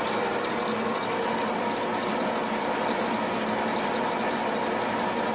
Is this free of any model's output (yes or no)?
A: yes